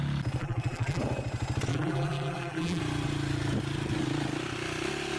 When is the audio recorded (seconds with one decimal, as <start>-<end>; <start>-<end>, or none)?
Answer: 0.0-0.4; 1.0-1.7; 2.8-5.2